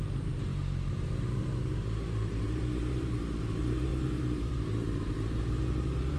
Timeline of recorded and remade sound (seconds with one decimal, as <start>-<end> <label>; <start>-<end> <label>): 0.0-6.2 remade